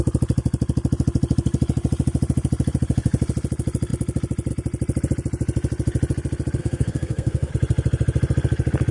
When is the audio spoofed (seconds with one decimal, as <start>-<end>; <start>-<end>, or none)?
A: 6.6-7.5

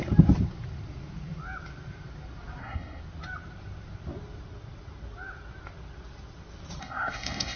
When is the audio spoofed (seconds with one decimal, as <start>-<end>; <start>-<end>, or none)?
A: 2.6-3.0; 6.8-7.6

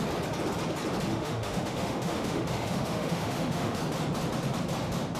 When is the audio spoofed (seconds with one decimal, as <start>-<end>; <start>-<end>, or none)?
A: 1.1-3.8

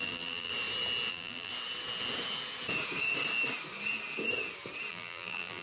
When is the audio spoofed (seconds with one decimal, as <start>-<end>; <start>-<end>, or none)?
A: 0.0-0.5; 1.1-1.5; 4.9-5.6

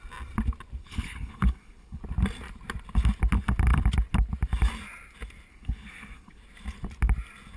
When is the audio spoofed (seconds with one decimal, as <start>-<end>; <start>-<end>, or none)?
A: 0.8-2.0; 5.5-6.4

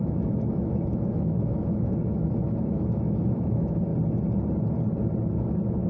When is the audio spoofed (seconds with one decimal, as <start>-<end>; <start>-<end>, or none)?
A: 0.0-3.9; 5.3-5.9

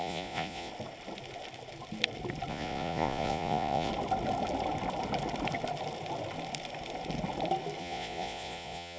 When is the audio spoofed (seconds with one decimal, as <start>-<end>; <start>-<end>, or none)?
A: 0.0-0.7; 2.5-3.9; 7.8-9.0